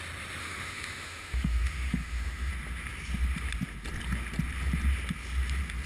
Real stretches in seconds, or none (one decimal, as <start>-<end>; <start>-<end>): 0.0-0.4; 2.5-5.9